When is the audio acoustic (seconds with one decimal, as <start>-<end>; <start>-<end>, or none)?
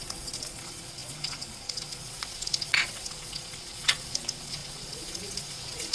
none